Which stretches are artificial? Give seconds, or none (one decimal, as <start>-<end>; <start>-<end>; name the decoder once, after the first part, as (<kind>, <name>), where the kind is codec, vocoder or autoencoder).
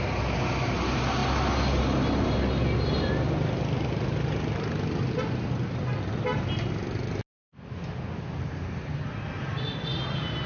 none